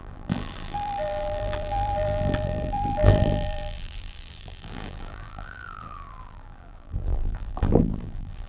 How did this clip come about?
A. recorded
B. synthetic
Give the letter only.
B